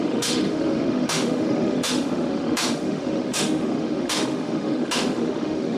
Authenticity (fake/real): fake